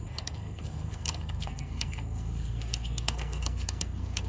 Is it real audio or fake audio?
fake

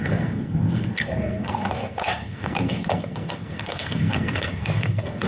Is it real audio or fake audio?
fake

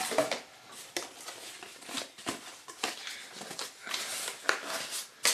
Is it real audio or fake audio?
real